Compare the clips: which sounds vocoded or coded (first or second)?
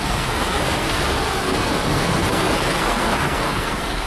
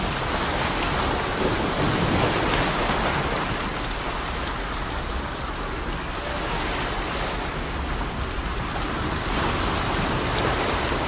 first